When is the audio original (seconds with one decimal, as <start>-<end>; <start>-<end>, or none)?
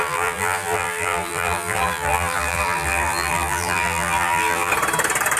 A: 4.7-5.4